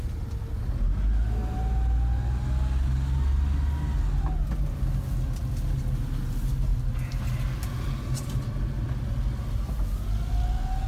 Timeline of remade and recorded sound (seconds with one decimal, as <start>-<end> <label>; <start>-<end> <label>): 0.0-10.9 recorded